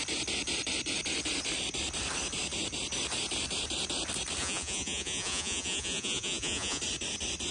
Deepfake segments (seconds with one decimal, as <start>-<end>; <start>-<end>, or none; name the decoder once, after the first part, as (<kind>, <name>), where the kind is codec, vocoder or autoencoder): 4.4-6.8 (vocoder, Vocos)